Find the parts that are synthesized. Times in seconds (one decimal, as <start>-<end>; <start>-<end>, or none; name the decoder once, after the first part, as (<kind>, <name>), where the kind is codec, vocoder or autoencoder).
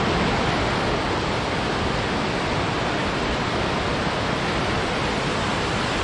none